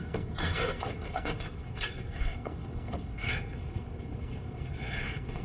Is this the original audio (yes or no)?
no